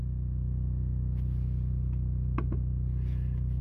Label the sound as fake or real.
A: real